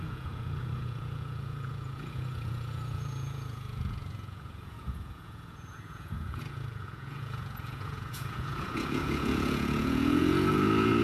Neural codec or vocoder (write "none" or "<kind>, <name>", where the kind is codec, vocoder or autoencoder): vocoder, Vocos